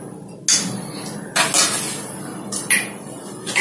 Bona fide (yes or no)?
yes